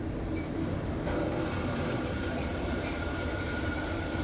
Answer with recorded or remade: remade